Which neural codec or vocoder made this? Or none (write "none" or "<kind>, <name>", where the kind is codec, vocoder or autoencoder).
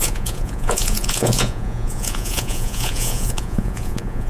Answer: vocoder, Vocos